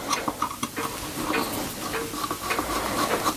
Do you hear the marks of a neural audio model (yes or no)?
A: no